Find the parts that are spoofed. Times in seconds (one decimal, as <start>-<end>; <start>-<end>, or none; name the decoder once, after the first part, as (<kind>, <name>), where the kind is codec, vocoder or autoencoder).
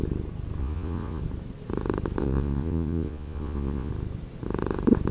0.6-1.2 (vocoder, Vocos); 2.2-3.9